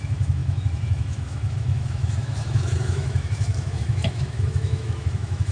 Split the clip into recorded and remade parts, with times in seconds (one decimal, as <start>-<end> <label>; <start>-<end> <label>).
0.0-5.5 remade